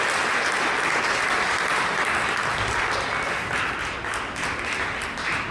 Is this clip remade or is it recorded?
recorded